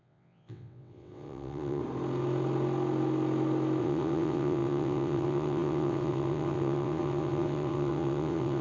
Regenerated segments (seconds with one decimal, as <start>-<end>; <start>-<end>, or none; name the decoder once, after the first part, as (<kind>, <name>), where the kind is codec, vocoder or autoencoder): 0.0-1.8 (vocoder, WaveNeXt); 3.8-8.6